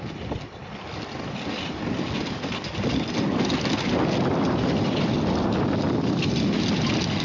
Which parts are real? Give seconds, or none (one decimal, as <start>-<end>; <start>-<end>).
0.0-7.2